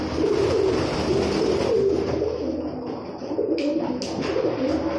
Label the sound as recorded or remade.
recorded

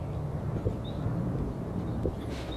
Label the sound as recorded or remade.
recorded